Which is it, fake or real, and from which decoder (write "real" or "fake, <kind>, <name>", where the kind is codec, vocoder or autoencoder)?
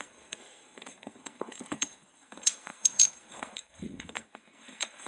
fake, codec, SNAC